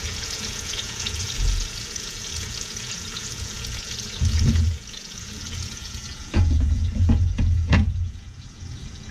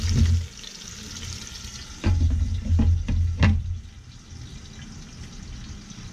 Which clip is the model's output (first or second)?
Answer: first